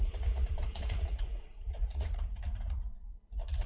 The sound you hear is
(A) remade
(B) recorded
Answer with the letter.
A